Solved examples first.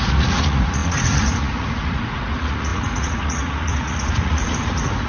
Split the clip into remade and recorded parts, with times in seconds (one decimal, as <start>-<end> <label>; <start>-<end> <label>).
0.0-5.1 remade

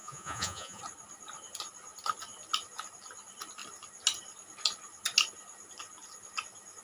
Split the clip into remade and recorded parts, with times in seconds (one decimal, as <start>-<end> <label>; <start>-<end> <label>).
0.0-0.8 remade; 0.8-6.8 recorded

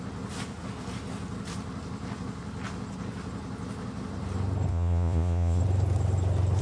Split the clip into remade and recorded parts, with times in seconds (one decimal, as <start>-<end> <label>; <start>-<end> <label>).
0.0-4.7 recorded; 4.7-5.6 remade; 5.6-6.6 recorded